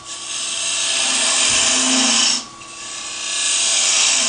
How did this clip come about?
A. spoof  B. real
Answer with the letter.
B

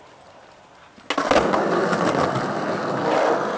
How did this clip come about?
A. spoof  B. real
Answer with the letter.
B